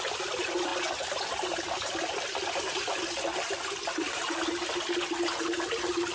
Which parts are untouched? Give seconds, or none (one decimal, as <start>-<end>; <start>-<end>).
0.0-6.1